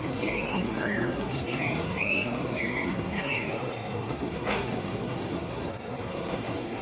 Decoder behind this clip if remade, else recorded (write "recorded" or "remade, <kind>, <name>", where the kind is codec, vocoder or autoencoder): remade, codec, SNAC